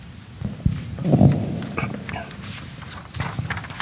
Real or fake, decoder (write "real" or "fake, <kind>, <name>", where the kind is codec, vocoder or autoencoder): fake, vocoder, BigVGAN v2